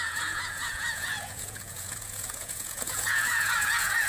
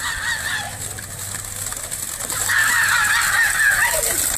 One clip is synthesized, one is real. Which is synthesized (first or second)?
first